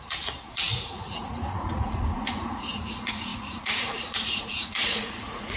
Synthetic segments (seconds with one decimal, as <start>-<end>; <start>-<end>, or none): 0.0-5.6